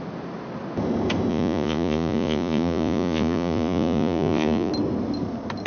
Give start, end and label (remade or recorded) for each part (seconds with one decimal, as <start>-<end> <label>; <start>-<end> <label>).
0.0-1.3 recorded; 1.3-4.7 remade; 4.7-5.7 recorded